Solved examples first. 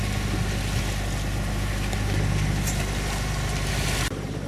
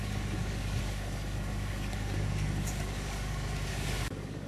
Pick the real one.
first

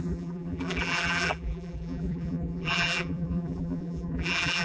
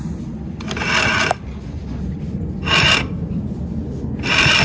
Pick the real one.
second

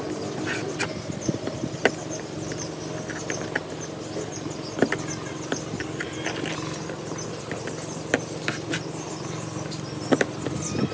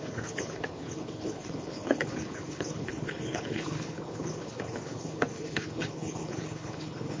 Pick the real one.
first